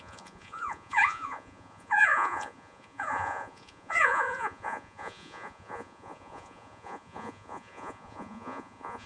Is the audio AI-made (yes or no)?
yes